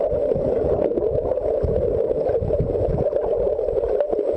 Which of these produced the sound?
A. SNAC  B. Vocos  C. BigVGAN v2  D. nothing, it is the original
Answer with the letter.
D